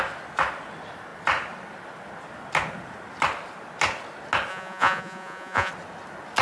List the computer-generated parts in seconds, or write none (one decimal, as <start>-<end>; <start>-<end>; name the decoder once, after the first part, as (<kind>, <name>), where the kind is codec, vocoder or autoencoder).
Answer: 4.5-5.7 (vocoder, Vocos)